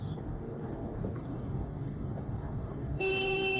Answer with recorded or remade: remade